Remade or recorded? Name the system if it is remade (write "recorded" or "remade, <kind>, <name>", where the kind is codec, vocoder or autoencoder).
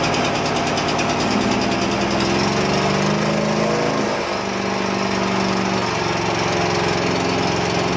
recorded